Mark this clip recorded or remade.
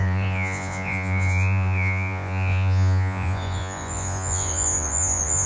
remade